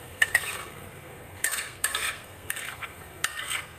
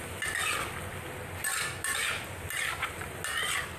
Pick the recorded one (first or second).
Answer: second